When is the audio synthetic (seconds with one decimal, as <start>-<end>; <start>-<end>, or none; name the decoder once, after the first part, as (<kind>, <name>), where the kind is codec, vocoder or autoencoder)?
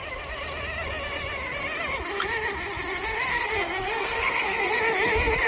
3.3-4.8 (codec, SNAC)